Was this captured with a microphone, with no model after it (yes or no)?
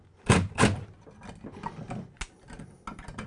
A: yes